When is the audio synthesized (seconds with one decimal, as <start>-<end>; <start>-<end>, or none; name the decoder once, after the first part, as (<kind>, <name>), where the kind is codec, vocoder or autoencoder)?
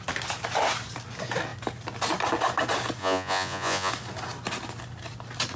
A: 3.0-3.9 (vocoder, Vocos)